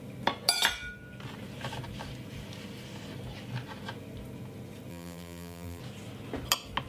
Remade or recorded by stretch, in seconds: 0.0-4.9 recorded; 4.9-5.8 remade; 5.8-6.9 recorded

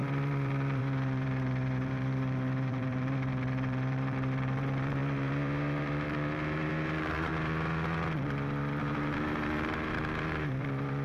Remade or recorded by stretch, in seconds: 0.0-7.3 remade; 7.3-8.8 recorded; 8.8-11.0 remade

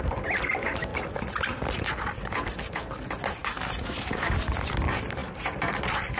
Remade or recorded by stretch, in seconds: 0.0-0.9 remade; 0.9-1.8 recorded; 1.8-3.4 remade; 3.4-4.0 recorded; 4.0-6.2 remade

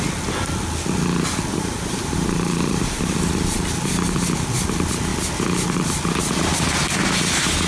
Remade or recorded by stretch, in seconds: 0.0-1.5 recorded; 1.5-3.1 remade; 3.1-7.7 recorded

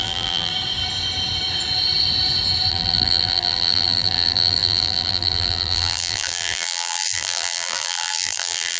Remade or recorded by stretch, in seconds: 0.0-0.5 remade; 0.5-2.7 recorded; 2.7-8.8 remade

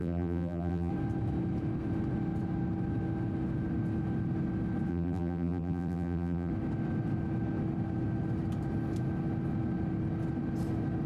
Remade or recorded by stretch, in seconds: 0.0-0.9 remade; 0.9-4.9 recorded; 4.9-6.5 remade; 6.5-11.1 recorded